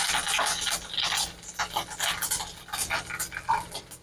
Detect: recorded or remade recorded